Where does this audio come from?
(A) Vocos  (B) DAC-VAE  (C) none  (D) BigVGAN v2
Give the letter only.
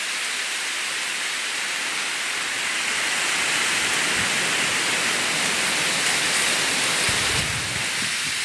C